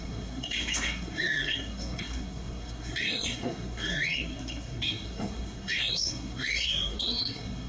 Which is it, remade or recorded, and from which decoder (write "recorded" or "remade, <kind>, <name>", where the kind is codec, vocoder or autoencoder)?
remade, codec, SNAC